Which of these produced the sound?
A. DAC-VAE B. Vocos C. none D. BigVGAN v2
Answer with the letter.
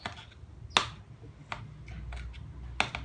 C